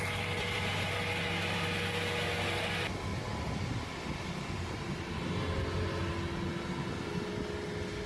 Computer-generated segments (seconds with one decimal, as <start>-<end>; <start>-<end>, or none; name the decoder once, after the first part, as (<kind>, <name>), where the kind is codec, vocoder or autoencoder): none